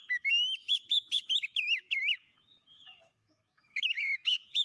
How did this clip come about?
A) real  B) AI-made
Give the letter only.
B